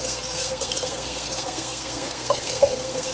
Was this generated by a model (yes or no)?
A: yes